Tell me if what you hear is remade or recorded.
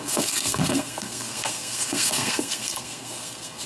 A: remade